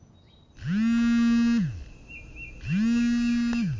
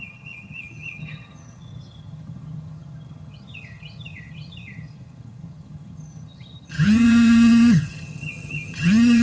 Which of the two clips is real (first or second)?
first